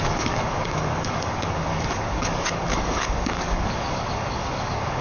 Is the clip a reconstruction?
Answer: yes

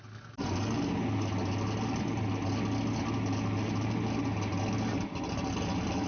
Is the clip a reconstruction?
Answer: no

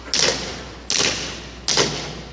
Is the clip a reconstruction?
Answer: no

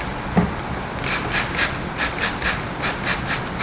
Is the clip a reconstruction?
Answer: no